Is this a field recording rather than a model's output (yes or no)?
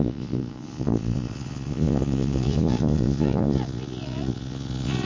no